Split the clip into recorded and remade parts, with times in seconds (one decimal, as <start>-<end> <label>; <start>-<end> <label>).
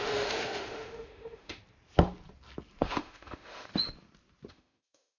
0.0-1.6 remade; 1.6-2.8 recorded; 2.8-3.7 remade; 3.7-4.5 recorded; 4.5-5.2 remade